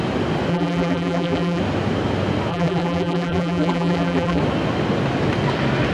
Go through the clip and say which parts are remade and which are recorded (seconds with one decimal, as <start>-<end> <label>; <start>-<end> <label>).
0.0-0.5 recorded; 0.5-1.6 remade; 1.6-2.5 recorded; 2.5-4.4 remade; 4.4-5.9 recorded